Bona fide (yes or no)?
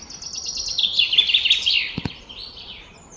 yes